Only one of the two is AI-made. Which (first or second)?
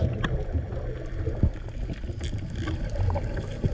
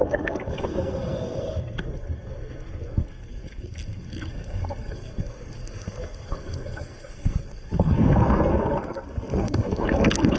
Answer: second